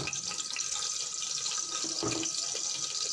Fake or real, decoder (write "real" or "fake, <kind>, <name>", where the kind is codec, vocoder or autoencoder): real